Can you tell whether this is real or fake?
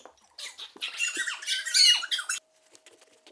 real